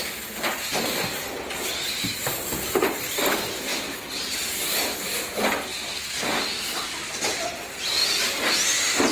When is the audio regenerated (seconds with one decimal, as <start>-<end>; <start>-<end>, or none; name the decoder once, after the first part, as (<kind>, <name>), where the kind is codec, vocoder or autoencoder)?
none